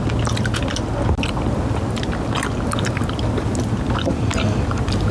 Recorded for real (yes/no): yes